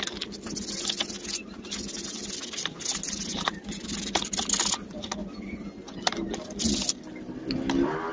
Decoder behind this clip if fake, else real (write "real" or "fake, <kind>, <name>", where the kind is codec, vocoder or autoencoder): real